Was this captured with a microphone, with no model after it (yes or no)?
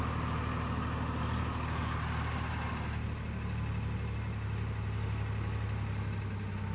yes